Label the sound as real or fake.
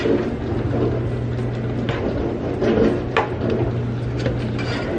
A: real